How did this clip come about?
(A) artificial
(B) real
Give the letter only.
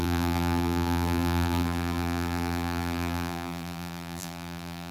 A